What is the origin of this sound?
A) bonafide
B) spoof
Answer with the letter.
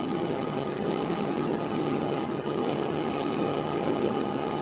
B